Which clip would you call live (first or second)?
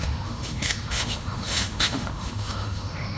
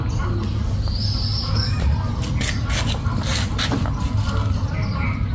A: second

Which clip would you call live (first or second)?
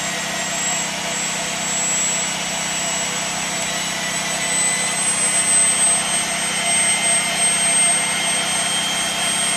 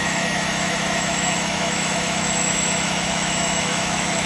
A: first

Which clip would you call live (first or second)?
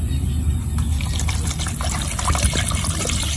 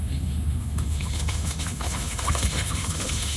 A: first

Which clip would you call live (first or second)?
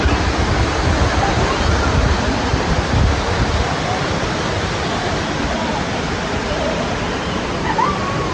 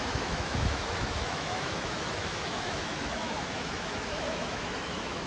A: first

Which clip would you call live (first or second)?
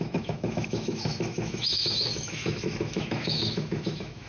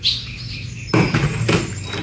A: second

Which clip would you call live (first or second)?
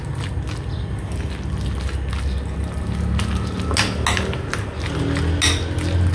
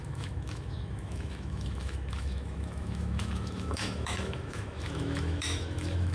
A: first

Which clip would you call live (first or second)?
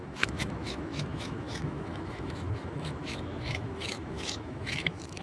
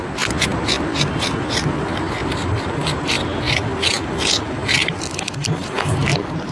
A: second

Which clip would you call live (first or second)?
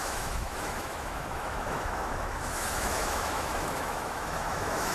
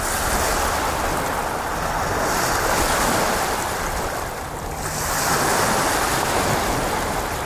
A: second